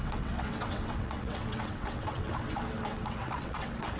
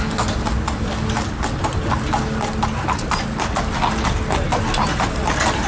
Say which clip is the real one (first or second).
second